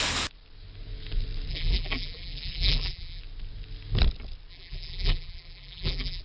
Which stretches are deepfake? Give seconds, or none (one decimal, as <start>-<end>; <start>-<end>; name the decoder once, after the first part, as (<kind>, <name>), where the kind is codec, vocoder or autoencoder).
1.5-3.2 (vocoder, BigVGAN v2); 4.5-6.2